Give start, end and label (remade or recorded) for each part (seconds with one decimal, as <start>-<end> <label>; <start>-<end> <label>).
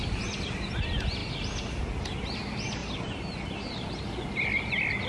0.0-5.1 recorded